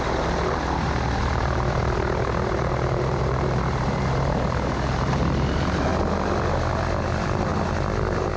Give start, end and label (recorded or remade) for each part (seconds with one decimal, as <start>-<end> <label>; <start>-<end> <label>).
0.0-5.9 remade; 5.9-7.1 recorded; 7.1-7.5 remade; 7.5-8.4 recorded

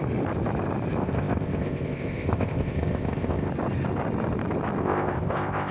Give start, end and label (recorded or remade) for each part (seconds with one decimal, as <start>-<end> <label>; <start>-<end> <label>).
0.0-1.0 recorded; 1.0-3.5 remade; 3.5-4.8 recorded; 4.8-5.7 remade

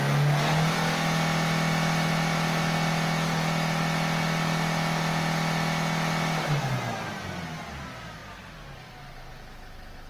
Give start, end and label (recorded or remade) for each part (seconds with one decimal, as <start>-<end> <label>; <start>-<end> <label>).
0.0-10.1 recorded

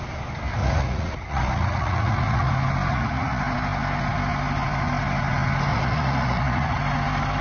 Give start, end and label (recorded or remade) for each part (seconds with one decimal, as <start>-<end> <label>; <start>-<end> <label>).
0.0-0.6 recorded; 0.6-2.5 remade; 2.5-2.9 recorded; 2.9-3.4 remade; 3.4-5.7 recorded; 5.7-6.8 remade; 6.8-7.4 recorded

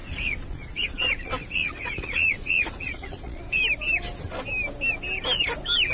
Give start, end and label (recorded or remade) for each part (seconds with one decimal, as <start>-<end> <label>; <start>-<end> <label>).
0.0-3.4 remade; 3.4-5.9 recorded